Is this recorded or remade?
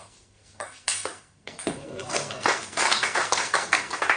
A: remade